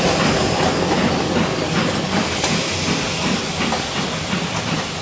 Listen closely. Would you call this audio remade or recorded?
recorded